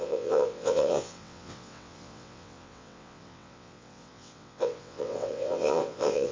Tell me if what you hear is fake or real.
fake